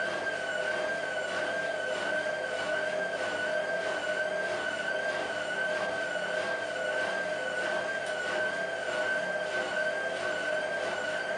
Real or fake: real